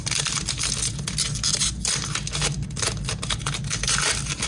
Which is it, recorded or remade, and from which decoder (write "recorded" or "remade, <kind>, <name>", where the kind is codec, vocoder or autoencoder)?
recorded